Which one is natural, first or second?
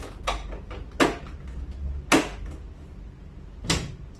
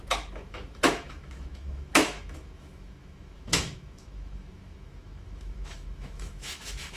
first